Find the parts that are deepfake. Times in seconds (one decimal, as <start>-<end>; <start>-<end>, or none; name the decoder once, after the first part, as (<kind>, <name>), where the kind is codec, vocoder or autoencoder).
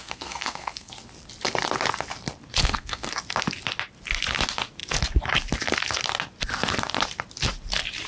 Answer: 0.0-0.9 (codec, SNAC); 2.6-3.1